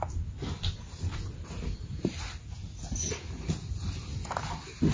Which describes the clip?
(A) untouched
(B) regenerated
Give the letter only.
A